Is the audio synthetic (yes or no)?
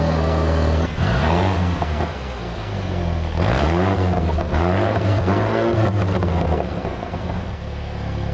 yes